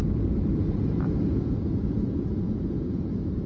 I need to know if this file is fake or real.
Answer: fake